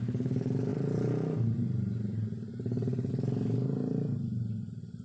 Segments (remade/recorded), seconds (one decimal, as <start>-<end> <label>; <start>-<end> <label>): 0.0-5.0 recorded